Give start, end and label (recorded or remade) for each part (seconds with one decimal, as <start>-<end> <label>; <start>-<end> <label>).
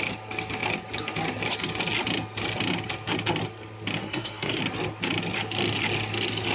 0.0-4.0 recorded; 4.0-4.6 remade; 4.6-6.5 recorded